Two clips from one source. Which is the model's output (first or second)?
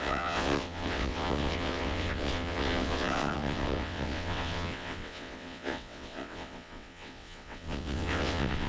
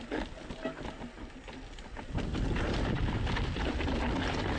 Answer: first